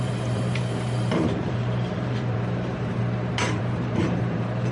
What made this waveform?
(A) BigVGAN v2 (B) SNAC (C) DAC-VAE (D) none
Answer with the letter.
A